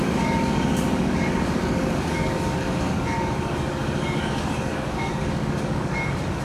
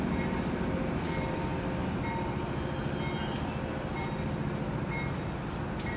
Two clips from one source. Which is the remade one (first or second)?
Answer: first